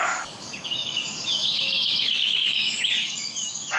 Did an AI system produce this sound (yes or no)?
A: yes